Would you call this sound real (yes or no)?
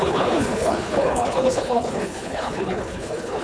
no